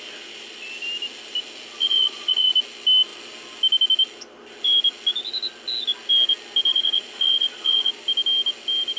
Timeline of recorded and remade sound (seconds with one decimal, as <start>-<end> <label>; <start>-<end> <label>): 0.0-1.8 recorded; 1.8-2.5 remade; 2.5-6.7 recorded; 6.7-7.9 remade; 7.9-9.0 recorded